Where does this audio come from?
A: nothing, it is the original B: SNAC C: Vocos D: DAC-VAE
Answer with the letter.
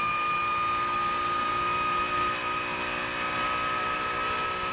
A